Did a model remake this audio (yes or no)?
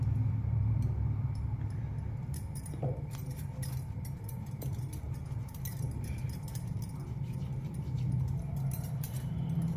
yes